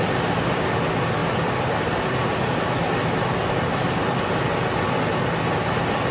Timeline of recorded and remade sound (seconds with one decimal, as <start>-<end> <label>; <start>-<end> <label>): 0.0-6.1 recorded